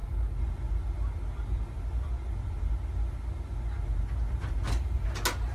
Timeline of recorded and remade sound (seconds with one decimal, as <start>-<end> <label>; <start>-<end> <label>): 0.0-5.5 recorded

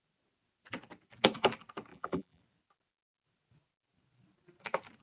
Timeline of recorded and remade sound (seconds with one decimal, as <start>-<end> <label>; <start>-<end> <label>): 0.0-1.9 recorded; 1.9-2.4 remade; 2.4-5.0 recorded